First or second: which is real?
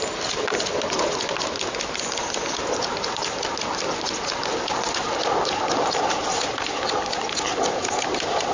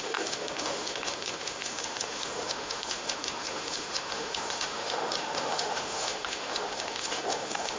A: first